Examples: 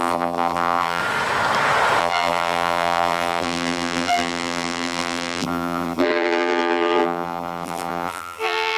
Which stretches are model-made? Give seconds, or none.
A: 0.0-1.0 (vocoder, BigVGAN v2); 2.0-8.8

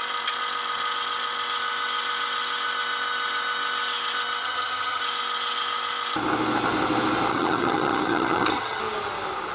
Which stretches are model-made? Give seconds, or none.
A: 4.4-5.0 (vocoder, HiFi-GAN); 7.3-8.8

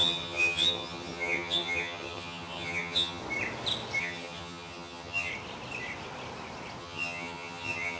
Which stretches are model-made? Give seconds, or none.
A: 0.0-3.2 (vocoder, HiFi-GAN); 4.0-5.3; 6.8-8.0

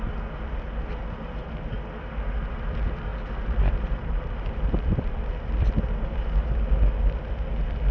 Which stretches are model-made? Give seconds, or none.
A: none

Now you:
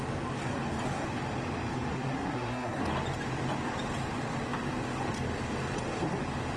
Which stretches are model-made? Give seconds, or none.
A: 1.9-2.8 (codec, SNAC)